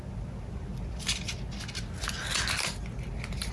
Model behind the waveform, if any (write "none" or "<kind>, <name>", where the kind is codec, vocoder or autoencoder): none